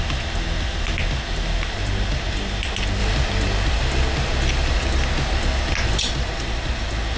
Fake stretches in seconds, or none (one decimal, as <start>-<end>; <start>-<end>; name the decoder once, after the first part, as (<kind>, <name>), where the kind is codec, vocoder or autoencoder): none